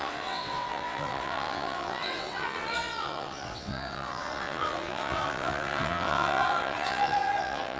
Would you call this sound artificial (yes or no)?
yes